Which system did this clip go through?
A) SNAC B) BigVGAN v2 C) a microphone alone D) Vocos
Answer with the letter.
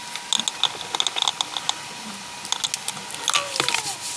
C